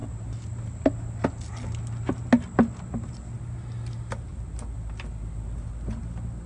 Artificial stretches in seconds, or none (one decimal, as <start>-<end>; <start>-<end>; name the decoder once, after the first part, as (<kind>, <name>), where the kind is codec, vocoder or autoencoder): none